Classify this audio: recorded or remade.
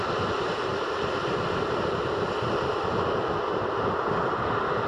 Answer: recorded